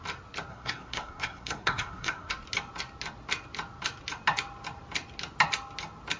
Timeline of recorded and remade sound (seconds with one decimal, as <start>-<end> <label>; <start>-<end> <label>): 0.0-0.5 recorded; 0.5-2.3 remade; 2.3-6.2 recorded